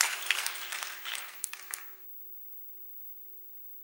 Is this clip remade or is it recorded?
remade